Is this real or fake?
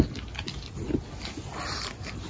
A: real